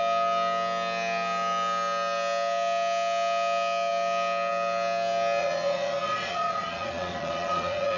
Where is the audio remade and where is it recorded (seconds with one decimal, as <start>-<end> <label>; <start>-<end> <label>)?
0.0-5.4 recorded; 5.4-8.0 remade